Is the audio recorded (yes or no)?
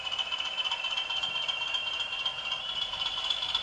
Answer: yes